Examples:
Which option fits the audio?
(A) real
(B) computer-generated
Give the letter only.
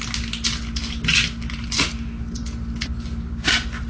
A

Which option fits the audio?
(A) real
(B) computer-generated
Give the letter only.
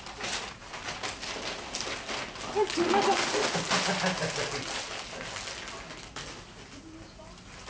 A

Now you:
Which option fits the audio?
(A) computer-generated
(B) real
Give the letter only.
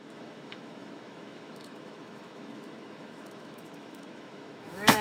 A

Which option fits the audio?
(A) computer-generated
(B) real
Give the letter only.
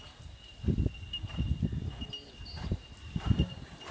B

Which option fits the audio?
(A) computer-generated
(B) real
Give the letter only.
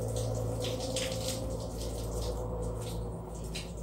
B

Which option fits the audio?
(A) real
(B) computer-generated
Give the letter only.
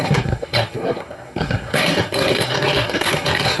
B